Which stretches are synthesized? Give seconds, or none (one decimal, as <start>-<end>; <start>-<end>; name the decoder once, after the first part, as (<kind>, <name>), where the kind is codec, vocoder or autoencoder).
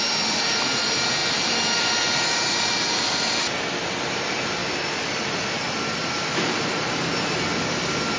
1.2-2.9 (vocoder, BigVGAN v2); 6.0-7.4